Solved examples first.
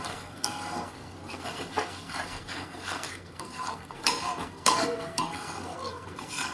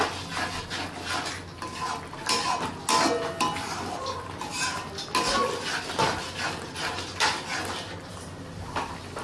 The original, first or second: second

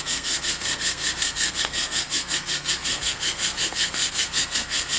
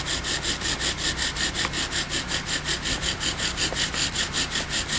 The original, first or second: second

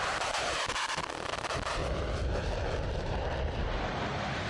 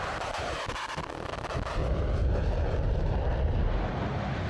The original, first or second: second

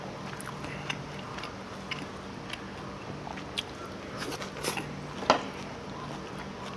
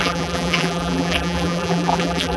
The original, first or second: first